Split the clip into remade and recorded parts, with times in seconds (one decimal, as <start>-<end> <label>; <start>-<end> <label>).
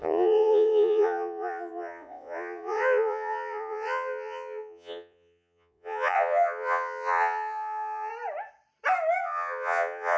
0.0-8.1 remade; 8.1-9.2 recorded; 9.2-10.2 remade